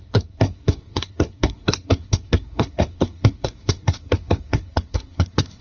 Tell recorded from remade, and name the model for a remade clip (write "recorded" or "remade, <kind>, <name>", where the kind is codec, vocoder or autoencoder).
remade, codec, SNAC